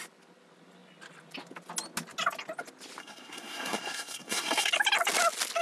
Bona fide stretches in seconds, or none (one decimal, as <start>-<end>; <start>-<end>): 0.0-3.0; 4.7-5.6